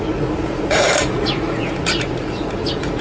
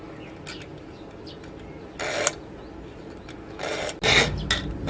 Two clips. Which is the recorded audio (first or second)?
second